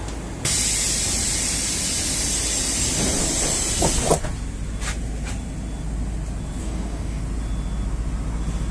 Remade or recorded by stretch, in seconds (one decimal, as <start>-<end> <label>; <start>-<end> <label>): 0.0-6.6 recorded; 6.6-7.2 remade; 7.2-8.7 recorded